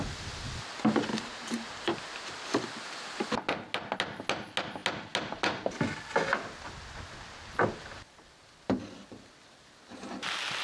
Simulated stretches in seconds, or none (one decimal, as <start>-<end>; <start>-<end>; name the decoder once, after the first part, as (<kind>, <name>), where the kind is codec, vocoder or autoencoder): 1.1-2.0 (vocoder, BigVGAN v2)

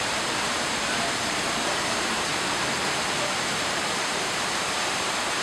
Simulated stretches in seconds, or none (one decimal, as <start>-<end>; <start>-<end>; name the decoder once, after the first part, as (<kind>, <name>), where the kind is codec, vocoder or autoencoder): 0.0-2.3 (vocoder, BigVGAN v2); 3.4-5.4

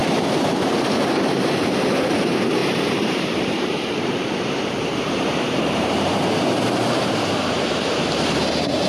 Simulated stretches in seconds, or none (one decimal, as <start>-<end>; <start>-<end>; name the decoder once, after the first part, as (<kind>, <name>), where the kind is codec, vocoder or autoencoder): 0.0-8.9 (vocoder, BigVGAN v2)

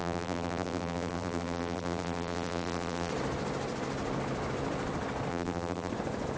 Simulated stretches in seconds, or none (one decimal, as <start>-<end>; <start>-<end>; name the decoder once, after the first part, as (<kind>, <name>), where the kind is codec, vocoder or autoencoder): 0.0-3.1 (vocoder, BigVGAN v2); 5.3-5.9

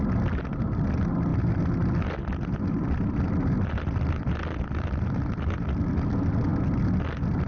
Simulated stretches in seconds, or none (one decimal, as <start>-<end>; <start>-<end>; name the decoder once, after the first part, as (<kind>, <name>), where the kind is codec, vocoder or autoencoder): none

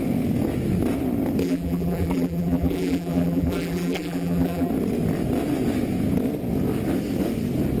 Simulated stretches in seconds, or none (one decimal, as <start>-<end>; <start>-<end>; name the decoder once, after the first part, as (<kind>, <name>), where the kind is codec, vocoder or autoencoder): 1.4-4.7 (vocoder, BigVGAN v2)

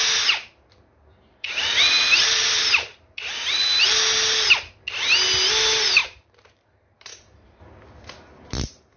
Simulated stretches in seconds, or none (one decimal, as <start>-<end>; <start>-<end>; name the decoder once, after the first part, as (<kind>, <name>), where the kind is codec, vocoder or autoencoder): 1.3-3.8 (vocoder, BigVGAN v2); 6.0-7.6

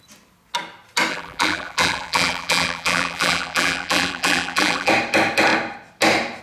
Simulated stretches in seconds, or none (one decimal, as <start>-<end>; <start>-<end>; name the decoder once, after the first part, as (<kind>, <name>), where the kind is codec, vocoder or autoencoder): 1.1-4.9 (vocoder, BigVGAN v2)